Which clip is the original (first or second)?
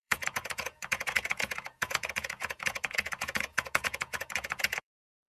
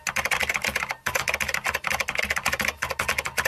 second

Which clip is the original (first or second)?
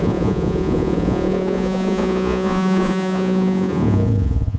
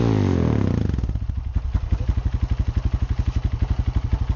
second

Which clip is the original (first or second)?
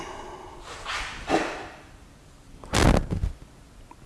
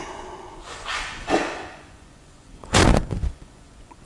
first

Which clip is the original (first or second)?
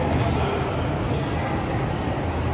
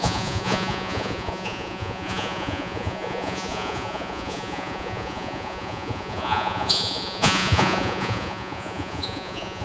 first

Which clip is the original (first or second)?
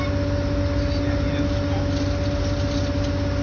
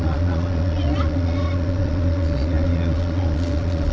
first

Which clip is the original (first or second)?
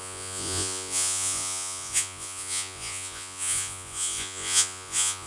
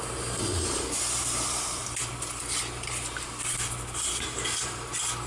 second